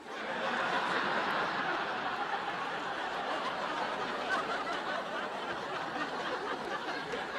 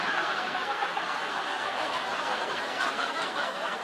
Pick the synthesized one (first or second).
second